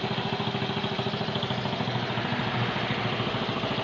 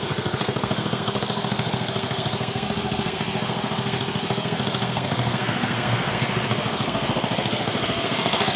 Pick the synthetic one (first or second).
second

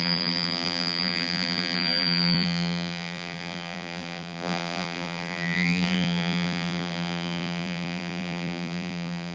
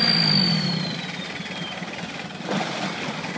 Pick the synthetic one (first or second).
first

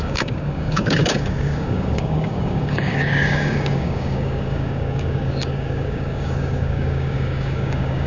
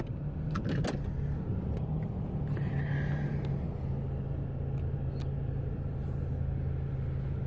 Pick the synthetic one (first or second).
first